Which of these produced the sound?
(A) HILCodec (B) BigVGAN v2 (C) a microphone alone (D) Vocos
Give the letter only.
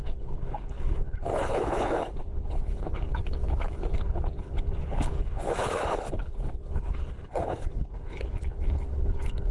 A